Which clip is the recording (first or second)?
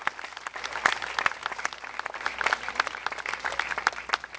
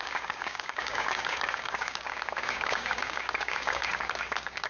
first